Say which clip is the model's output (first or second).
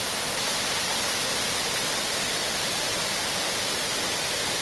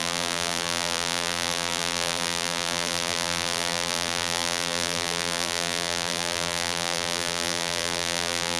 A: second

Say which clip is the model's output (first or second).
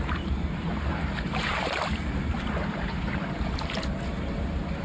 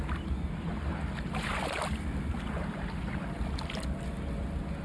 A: first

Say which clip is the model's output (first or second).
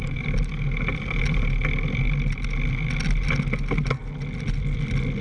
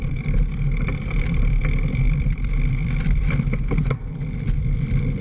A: second